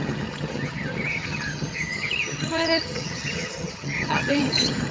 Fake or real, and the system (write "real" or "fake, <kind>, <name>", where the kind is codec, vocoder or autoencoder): fake, vocoder, HiFi-GAN